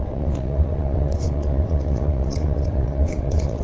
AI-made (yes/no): yes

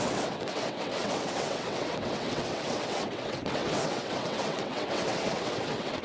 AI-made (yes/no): yes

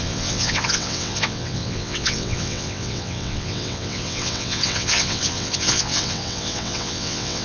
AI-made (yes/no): yes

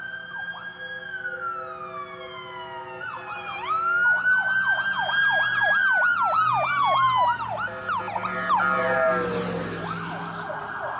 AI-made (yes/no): no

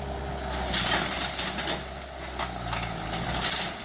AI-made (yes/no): no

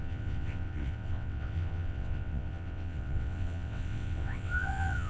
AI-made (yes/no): yes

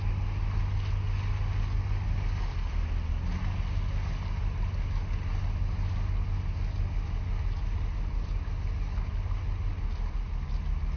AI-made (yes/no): no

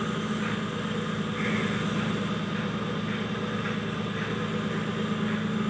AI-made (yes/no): no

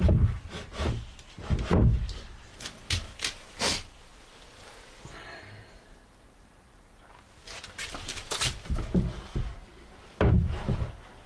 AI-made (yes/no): no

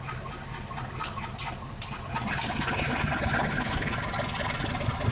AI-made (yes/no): no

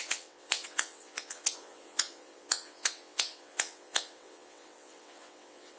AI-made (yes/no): yes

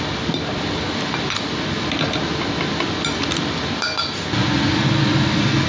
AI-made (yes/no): no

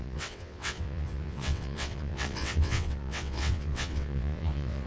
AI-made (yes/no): yes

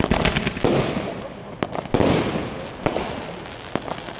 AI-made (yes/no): no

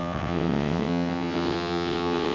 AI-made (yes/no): yes